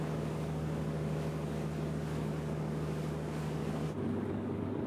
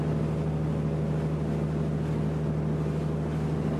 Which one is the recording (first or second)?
second